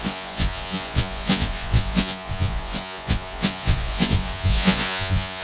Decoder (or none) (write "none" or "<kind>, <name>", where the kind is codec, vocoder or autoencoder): vocoder, Vocos